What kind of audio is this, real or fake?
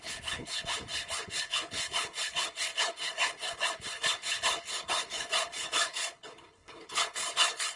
fake